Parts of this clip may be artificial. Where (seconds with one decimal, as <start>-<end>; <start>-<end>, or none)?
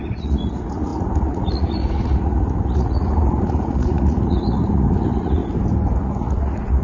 0.0-5.4; 6.0-6.8